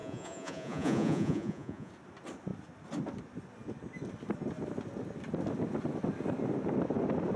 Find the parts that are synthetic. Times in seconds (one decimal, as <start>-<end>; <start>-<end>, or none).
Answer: 0.0-1.9